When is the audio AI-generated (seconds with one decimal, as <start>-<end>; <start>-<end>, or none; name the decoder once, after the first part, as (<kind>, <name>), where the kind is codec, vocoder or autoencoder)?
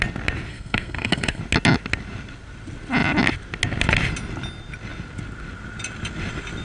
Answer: 0.5-1.4 (codec, SNAC)